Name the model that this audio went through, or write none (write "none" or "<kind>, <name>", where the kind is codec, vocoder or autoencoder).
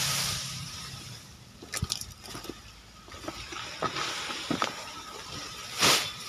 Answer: none